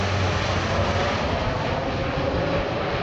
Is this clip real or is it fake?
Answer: real